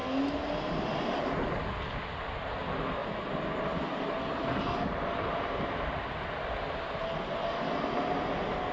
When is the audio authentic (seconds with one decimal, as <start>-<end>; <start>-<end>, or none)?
0.0-8.7